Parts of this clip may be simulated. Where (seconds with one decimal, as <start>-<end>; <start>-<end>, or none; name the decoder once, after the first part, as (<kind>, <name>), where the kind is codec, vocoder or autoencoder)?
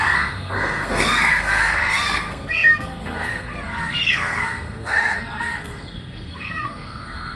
0.0-7.4 (codec, SNAC)